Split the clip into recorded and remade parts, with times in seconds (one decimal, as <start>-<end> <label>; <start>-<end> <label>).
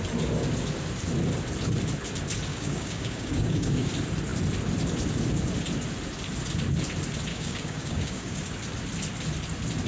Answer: 0.0-2.5 recorded; 2.5-3.9 remade; 3.9-7.3 recorded; 7.3-8.4 remade; 8.4-9.9 recorded